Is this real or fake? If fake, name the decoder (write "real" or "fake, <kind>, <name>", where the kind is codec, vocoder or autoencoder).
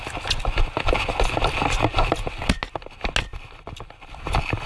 real